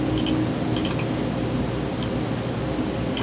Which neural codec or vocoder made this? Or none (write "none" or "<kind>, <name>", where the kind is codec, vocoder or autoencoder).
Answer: none